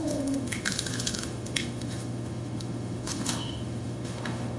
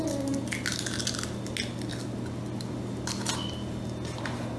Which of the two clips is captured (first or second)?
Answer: second